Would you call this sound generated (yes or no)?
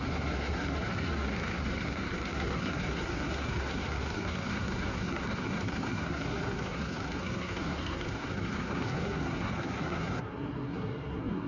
yes